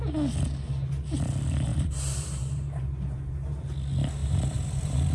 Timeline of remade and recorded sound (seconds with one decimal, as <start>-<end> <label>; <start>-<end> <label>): 0.0-1.7 recorded; 1.7-3.6 remade; 3.6-4.2 recorded; 4.2-5.1 remade